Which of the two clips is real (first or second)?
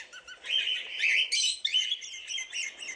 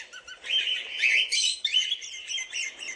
first